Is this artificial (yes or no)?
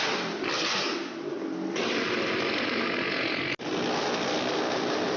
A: no